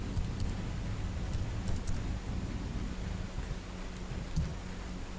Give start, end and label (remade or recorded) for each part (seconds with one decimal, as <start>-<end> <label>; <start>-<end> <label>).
0.0-5.2 recorded